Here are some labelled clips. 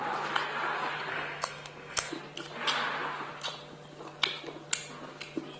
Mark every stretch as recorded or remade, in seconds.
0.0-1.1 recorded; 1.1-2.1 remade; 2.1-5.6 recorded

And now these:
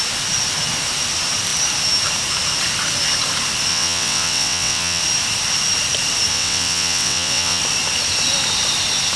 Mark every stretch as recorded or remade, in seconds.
0.0-3.7 recorded; 3.7-5.0 remade; 5.0-6.3 recorded; 6.3-7.6 remade; 7.6-9.2 recorded

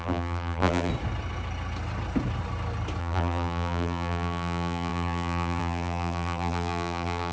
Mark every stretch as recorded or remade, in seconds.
0.0-0.9 remade; 0.9-3.0 recorded; 3.0-7.3 remade

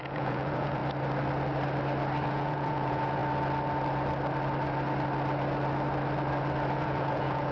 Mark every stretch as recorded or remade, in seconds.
0.0-0.8 remade; 0.8-2.3 recorded; 2.3-3.2 remade; 3.2-6.7 recorded; 6.7-7.5 remade

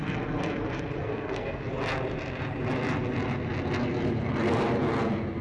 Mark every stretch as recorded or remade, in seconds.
0.0-1.0 recorded; 1.0-1.6 remade; 1.6-5.4 recorded